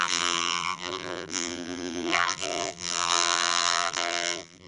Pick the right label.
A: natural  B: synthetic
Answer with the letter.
B